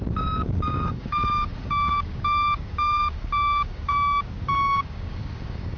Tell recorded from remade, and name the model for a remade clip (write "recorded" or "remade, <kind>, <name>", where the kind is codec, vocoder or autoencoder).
remade, codec, DAC